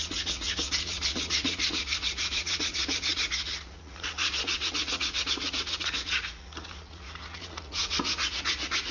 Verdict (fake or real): fake